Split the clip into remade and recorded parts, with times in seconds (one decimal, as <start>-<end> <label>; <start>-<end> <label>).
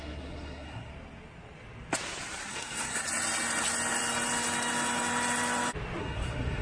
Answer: 0.0-0.9 remade; 0.9-2.5 recorded; 2.5-3.0 remade; 3.0-6.0 recorded; 6.0-6.6 remade